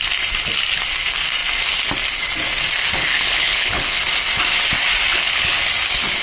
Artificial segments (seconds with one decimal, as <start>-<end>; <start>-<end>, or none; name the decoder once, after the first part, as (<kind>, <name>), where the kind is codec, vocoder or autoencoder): 3.1-4.0 (codec, HILCodec); 5.1-5.6